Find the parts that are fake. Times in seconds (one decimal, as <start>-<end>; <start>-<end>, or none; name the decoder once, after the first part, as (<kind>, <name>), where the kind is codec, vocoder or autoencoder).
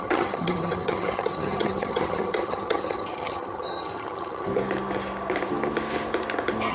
0.0-4.5 (vocoder, HiFi-GAN)